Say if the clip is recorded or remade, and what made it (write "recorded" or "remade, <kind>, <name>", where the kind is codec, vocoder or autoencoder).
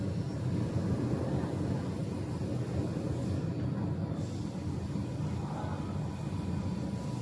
recorded